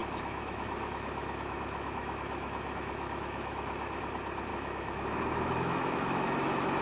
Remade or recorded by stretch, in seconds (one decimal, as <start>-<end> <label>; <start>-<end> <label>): 0.0-4.0 remade; 4.0-4.5 recorded; 4.5-6.8 remade